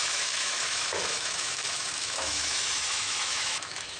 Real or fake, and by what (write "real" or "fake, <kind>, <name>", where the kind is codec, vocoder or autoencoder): fake, autoencoder, DAC-VAE